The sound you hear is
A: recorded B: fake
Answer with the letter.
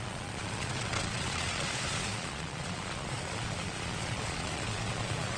B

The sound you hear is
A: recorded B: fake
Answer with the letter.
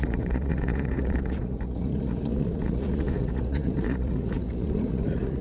B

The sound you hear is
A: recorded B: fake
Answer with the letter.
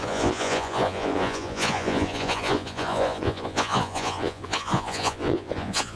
B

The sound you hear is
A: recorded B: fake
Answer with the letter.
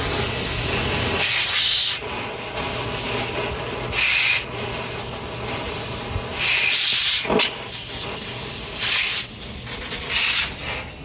A